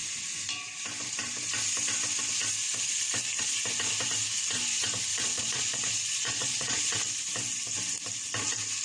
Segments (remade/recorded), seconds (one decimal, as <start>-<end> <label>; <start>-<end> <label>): 0.0-5.1 recorded; 5.1-6.8 remade; 6.8-8.8 recorded